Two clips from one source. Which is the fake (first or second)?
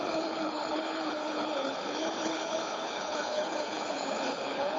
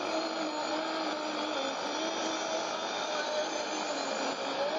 first